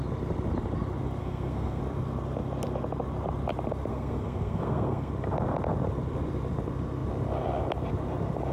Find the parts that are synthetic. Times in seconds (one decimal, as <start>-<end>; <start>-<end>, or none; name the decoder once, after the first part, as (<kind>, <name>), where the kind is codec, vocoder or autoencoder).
1.2-1.8 (codec, SNAC); 3.9-5.1